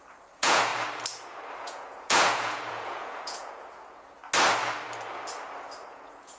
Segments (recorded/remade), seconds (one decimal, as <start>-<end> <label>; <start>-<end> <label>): 0.0-0.7 remade; 0.7-1.6 recorded; 1.6-4.2 remade; 4.2-5.9 recorded; 5.9-6.4 remade